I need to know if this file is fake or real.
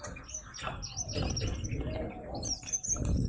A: real